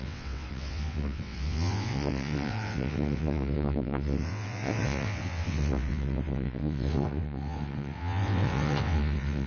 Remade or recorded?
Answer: remade